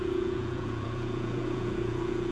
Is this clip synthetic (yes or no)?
yes